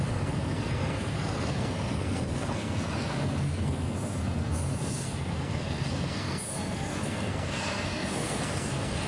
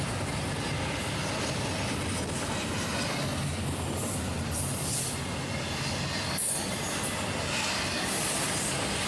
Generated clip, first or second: first